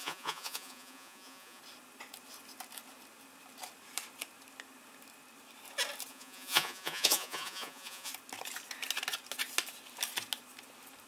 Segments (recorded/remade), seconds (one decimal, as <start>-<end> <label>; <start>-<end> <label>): 0.0-1.6 remade; 1.6-6.1 recorded; 6.1-8.1 remade; 8.1-11.1 recorded